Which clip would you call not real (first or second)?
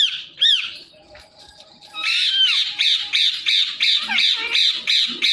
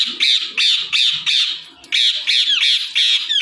first